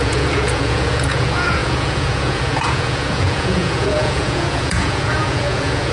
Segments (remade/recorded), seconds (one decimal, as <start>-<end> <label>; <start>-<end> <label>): 0.0-5.9 remade